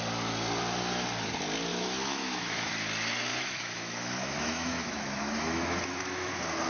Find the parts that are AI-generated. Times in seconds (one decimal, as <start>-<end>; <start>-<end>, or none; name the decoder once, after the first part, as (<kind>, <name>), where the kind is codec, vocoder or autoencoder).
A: 1.7-2.7 (autoencoder, DAC-VAE); 3.3-6.3